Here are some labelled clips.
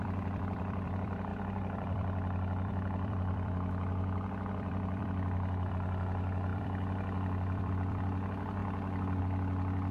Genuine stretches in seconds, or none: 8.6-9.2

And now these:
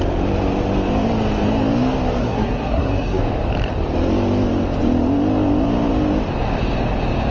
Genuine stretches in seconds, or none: 0.0-2.2; 3.2-7.3

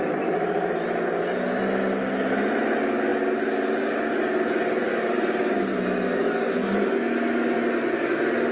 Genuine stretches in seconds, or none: 0.0-8.5

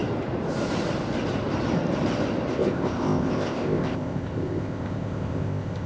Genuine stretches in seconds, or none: 0.0-2.5

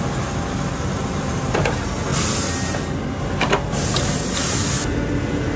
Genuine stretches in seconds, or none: 0.0-5.6

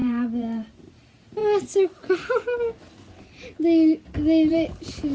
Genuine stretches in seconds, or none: 1.4-4.5

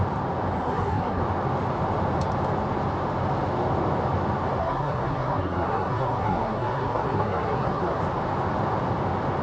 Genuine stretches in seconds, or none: 0.0-0.6; 1.2-4.6; 8.0-9.4